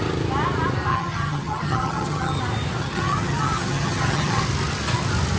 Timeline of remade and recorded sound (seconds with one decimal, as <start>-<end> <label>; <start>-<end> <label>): 0.0-0.9 recorded; 0.9-2.4 remade; 2.4-2.8 recorded; 2.8-4.4 remade; 4.4-5.4 recorded